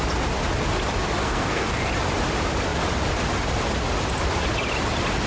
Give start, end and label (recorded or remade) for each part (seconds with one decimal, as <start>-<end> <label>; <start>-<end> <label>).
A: 0.0-1.2 recorded; 1.2-1.9 remade; 1.9-5.3 recorded

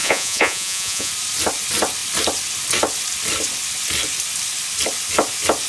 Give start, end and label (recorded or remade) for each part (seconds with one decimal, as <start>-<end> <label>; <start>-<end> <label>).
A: 0.0-1.1 remade; 1.1-5.7 recorded

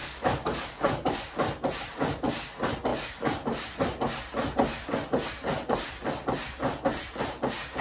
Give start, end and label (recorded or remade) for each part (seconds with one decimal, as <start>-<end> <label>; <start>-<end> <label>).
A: 0.0-1.2 remade; 1.2-7.8 recorded

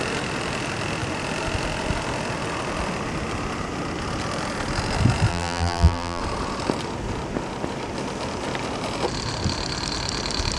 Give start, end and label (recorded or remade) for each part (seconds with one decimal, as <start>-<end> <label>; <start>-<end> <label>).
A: 0.0-5.3 recorded; 5.3-6.2 remade; 6.2-10.6 recorded

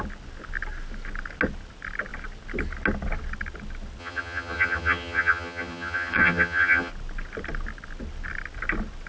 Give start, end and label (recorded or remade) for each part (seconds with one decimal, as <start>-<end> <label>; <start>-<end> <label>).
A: 0.0-4.0 recorded; 4.0-6.9 remade; 6.9-9.1 recorded